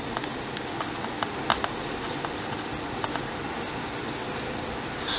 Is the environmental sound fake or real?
real